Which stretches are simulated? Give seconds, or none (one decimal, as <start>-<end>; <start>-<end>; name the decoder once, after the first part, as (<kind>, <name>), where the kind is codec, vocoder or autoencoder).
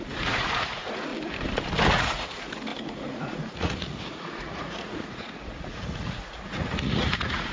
0.0-1.1 (vocoder, Vocos); 1.9-7.5